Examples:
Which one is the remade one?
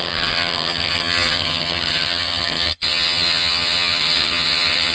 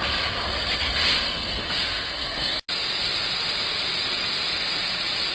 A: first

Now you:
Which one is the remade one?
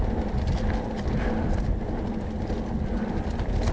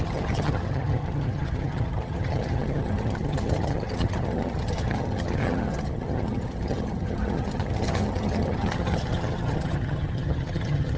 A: second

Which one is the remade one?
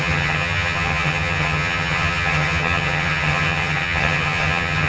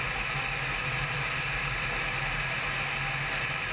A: first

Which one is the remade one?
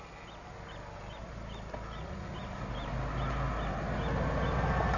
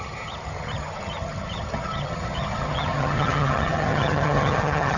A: second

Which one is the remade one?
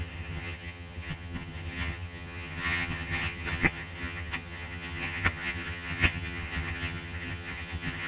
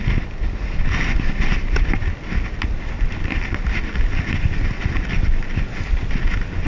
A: first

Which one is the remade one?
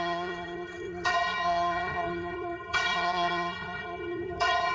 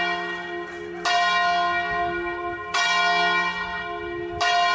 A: first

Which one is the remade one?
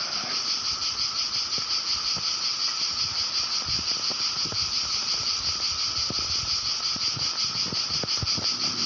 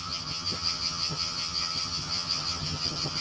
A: second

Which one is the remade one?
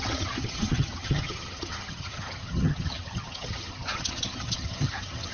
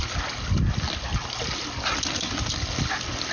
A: first